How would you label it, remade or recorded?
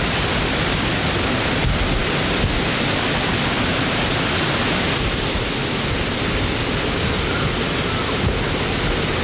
recorded